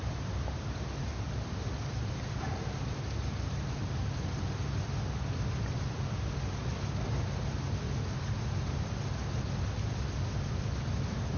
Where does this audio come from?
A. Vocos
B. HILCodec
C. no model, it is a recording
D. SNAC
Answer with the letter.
C